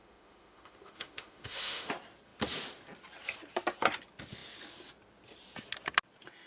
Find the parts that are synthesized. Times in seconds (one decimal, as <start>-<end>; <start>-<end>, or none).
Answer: 0.0-1.9